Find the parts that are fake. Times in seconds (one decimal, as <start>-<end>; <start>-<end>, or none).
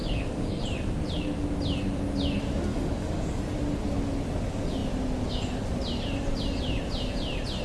0.0-0.6; 2.7-3.4